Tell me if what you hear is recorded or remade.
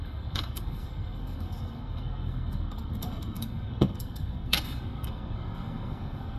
remade